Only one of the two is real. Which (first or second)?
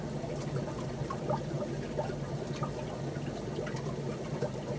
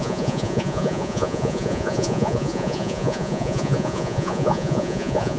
first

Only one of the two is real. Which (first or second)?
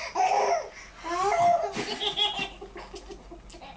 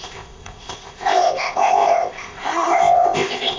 first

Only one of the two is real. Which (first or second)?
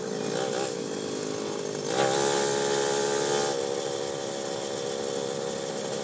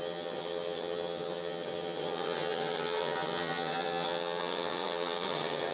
first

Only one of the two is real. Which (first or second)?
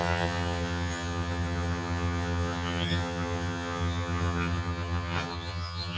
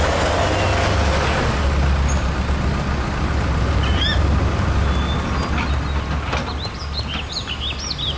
second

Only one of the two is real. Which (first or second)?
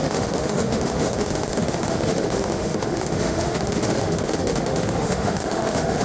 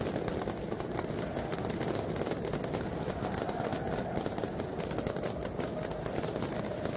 second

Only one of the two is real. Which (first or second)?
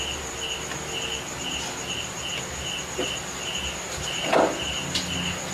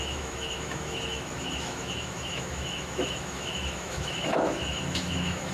first